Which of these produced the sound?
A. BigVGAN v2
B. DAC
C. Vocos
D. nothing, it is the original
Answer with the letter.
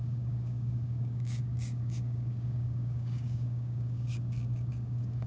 B